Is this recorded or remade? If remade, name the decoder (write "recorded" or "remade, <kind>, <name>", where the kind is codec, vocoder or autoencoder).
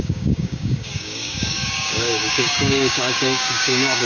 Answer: remade, codec, DAC